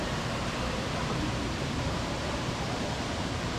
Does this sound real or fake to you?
fake